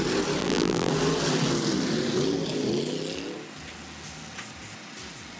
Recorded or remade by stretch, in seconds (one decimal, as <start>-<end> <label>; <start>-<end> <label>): 0.0-0.4 recorded; 0.4-0.9 remade; 0.9-5.4 recorded